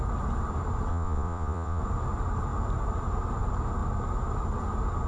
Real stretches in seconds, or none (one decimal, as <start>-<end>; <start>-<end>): 0.0-0.9; 1.8-5.1